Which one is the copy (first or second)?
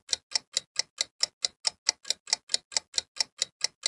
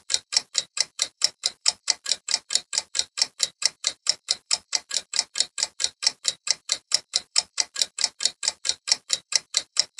second